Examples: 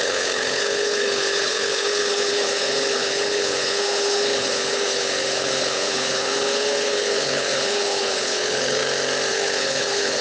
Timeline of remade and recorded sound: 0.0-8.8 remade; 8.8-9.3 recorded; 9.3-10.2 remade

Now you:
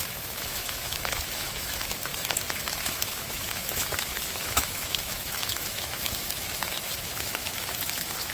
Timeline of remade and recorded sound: 0.0-8.3 remade

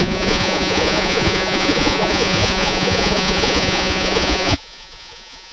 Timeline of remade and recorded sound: 0.0-5.5 remade